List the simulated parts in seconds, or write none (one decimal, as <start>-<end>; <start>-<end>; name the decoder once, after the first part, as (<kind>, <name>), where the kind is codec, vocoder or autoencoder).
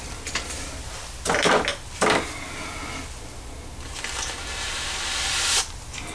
none